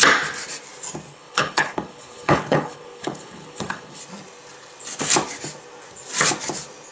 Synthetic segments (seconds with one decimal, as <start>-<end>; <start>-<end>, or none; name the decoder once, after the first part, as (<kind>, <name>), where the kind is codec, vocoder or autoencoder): 1.1-4.0 (codec, HILCodec)